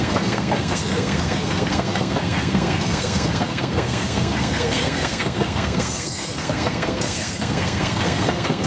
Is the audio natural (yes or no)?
no